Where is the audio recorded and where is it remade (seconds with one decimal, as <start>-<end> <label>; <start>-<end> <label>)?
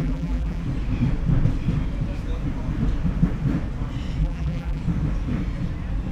0.0-0.6 remade; 0.6-4.2 recorded; 4.2-4.8 remade; 4.8-6.1 recorded